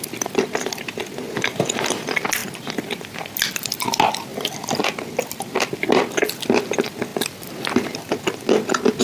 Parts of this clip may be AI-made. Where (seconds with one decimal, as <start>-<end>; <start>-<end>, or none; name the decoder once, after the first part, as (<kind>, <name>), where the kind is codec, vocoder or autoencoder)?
none